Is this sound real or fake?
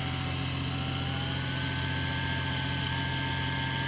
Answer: real